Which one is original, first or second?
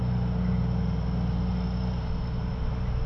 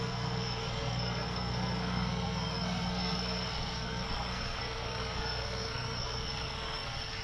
first